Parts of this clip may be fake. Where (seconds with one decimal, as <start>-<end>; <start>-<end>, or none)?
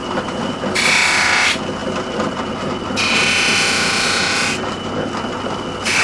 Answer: 0.0-0.6; 1.8-2.9